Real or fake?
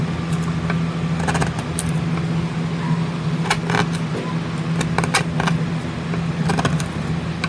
real